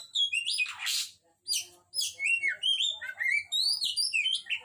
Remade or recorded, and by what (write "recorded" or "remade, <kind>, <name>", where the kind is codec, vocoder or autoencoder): recorded